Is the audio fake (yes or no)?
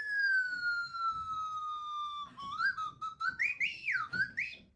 no